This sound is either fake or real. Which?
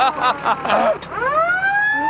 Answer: real